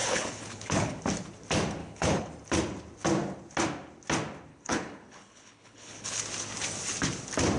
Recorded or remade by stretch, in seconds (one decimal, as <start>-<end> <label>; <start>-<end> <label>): 0.0-1.0 remade; 1.0-1.8 recorded; 1.8-2.3 remade; 2.3-4.5 recorded; 4.5-6.2 remade; 6.2-7.6 recorded